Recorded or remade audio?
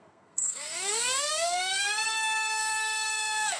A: remade